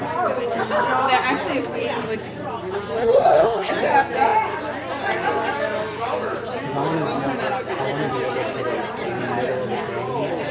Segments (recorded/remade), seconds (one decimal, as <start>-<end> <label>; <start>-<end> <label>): 0.0-3.0 recorded; 3.0-3.7 remade; 3.7-10.5 recorded